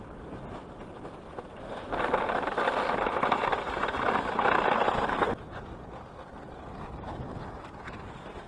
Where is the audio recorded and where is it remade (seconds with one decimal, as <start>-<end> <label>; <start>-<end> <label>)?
0.0-1.3 recorded; 1.3-2.6 remade; 2.6-8.5 recorded